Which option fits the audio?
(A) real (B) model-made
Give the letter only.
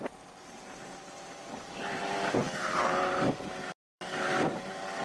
B